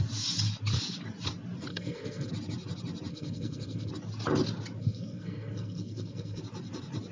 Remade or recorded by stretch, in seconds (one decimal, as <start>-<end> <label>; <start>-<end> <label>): 0.0-1.7 recorded; 1.7-2.3 remade; 2.3-3.1 recorded; 3.1-3.9 remade; 3.9-4.8 recorded; 4.8-6.4 remade; 6.4-7.1 recorded